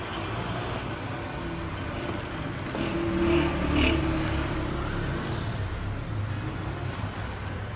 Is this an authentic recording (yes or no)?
yes